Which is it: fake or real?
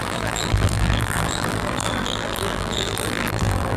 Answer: fake